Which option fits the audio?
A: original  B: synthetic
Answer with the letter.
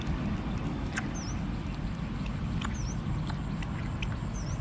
A